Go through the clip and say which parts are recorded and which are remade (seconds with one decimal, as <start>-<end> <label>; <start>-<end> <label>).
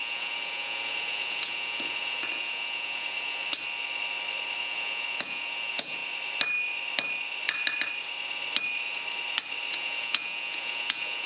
0.0-3.4 remade; 3.4-4.6 recorded; 4.6-6.0 remade; 6.0-9.7 recorded; 9.7-11.3 remade